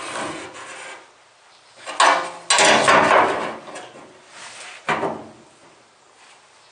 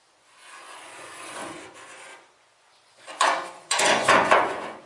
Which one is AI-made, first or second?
second